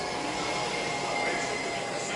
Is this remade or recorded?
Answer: recorded